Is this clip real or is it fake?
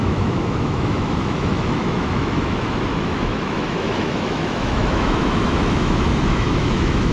fake